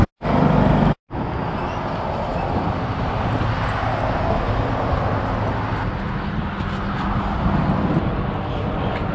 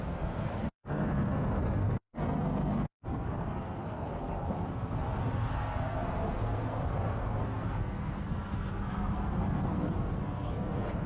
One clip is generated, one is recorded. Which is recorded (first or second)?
first